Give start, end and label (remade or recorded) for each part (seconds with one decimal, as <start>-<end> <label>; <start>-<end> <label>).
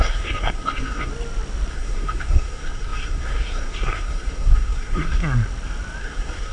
0.0-1.1 remade; 1.1-1.7 recorded; 1.7-5.2 remade; 5.2-6.0 recorded; 6.0-6.5 remade